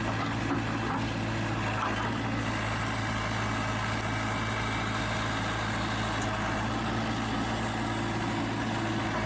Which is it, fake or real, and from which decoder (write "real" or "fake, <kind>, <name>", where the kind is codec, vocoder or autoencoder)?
real